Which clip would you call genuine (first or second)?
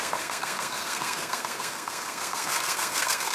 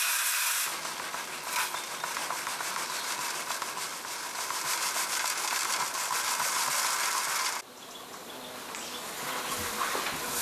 second